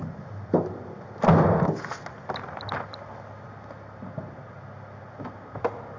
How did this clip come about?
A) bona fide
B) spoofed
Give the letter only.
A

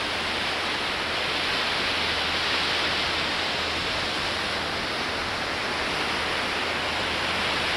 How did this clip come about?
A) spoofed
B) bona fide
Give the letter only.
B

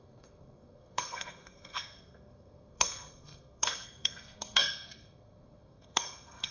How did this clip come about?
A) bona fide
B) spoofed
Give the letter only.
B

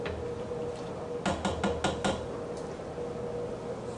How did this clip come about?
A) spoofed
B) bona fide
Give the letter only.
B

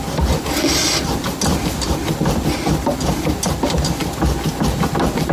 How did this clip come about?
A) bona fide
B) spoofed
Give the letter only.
A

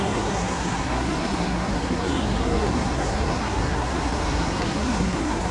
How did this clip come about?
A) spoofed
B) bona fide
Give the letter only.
A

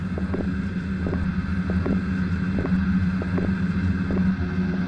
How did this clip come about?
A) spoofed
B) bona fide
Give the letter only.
B